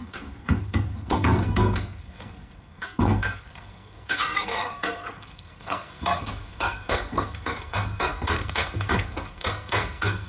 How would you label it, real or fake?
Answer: fake